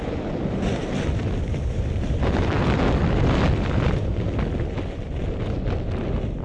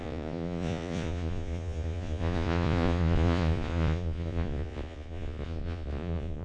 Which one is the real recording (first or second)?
first